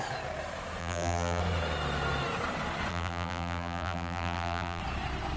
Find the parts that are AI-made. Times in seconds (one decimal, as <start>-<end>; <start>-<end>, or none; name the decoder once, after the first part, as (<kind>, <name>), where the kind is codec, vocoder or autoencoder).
0.8-1.4 (vocoder, BigVGAN v2); 2.9-4.8